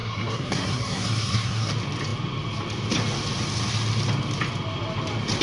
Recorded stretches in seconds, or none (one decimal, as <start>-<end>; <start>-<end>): 1.7-5.4